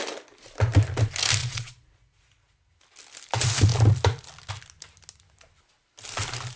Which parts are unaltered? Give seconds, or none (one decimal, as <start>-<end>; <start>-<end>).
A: 0.0-1.4; 2.7-6.6